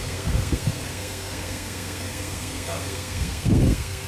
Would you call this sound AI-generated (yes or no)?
yes